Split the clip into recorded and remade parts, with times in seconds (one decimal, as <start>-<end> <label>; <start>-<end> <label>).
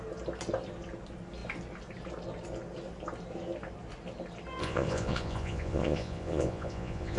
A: 0.0-4.6 recorded; 4.6-7.2 remade